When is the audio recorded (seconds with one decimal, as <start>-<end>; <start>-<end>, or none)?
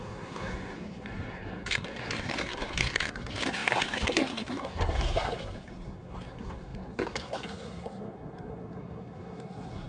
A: none